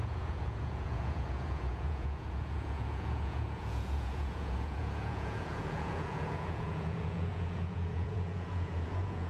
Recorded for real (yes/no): no